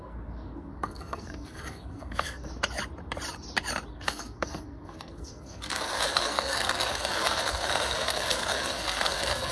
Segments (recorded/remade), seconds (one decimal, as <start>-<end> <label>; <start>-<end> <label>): 0.0-2.5 remade; 2.5-3.9 recorded; 3.9-9.5 remade